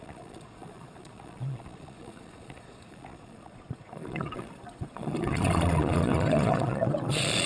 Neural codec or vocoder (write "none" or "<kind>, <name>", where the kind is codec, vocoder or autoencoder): vocoder, Vocos